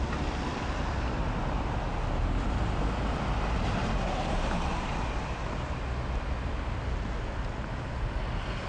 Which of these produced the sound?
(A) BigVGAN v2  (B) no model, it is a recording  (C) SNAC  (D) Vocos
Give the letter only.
B